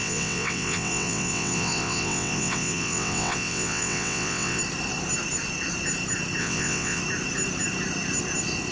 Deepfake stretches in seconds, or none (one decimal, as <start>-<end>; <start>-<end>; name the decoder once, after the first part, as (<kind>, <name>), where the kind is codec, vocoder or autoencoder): 0.0-4.6 (vocoder, WaveNeXt); 6.4-7.0